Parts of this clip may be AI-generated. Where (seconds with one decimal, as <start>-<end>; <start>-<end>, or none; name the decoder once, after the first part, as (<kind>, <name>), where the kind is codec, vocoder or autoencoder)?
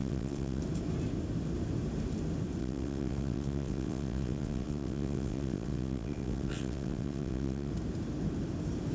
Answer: 0.0-0.6 (vocoder, WaveNeXt); 2.6-7.7